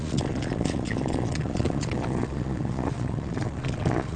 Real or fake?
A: fake